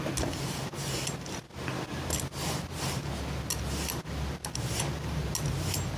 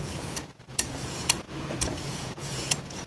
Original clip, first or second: first